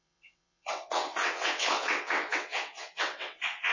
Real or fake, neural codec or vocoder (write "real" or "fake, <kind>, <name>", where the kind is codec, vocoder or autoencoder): fake, vocoder, WaveNeXt